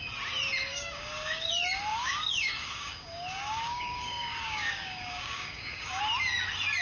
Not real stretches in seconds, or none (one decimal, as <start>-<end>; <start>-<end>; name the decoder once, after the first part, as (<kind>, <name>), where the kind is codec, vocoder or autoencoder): 0.7-1.5 (codec, DAC); 1.9-6.0